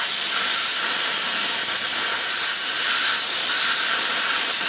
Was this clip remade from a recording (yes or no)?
no